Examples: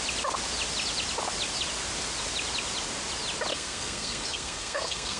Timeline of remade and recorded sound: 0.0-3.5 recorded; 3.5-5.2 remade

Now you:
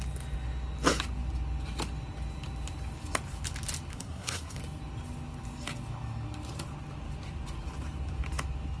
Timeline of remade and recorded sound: 0.0-3.9 recorded; 3.9-4.6 remade; 4.6-8.8 recorded

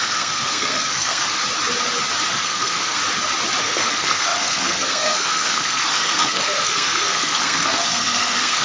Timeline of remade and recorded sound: 0.0-1.4 remade; 1.4-2.3 recorded; 2.3-3.0 remade; 3.0-3.6 recorded; 3.6-8.6 remade

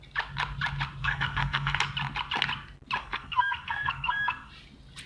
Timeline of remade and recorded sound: 0.0-1.0 recorded; 1.0-1.8 remade; 1.8-3.0 recorded; 3.0-4.5 remade; 4.5-5.1 recorded

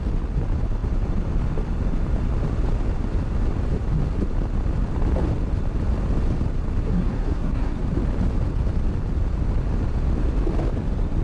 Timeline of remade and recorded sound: 0.0-6.8 recorded; 6.8-7.8 remade; 7.8-11.2 recorded

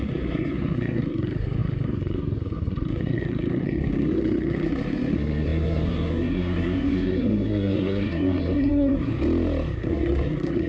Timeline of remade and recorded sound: 0.0-9.1 remade; 9.1-9.8 recorded; 9.8-10.7 remade

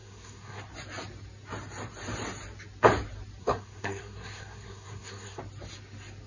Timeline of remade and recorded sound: 0.0-0.6 remade; 0.6-3.4 recorded; 3.4-5.4 remade; 5.4-6.3 recorded